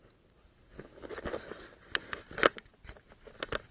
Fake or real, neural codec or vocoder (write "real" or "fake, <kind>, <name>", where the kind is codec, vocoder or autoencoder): real